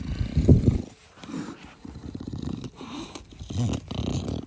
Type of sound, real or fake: real